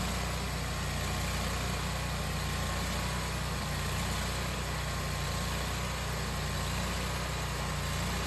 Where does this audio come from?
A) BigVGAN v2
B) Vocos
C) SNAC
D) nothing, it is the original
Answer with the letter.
D